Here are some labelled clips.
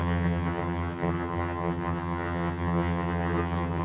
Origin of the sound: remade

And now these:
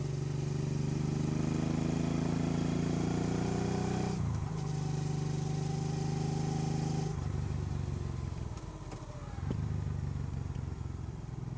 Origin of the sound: recorded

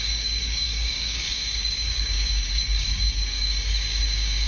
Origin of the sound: remade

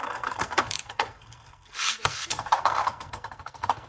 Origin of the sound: remade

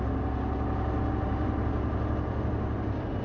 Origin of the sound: recorded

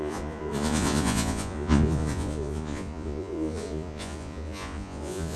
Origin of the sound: remade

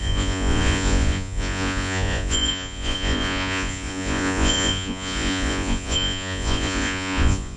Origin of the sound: remade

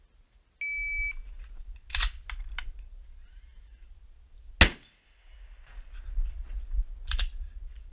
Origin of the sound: recorded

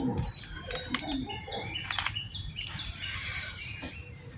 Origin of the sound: remade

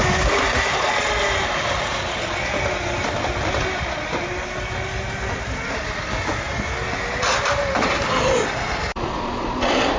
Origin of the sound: recorded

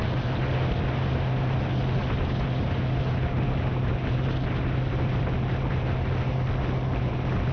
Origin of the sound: recorded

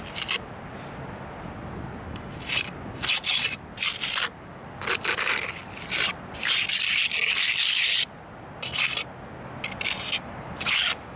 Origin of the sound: recorded